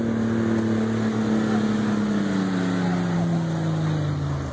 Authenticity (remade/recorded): recorded